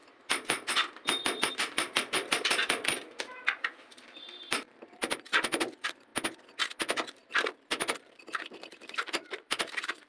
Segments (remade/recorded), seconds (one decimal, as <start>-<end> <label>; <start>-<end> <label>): 0.0-1.5 recorded; 1.5-6.1 remade; 6.1-6.7 recorded; 6.7-10.1 remade